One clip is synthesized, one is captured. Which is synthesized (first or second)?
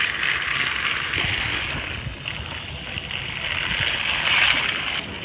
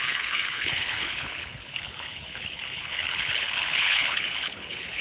second